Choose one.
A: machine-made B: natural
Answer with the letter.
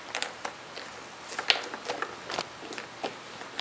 B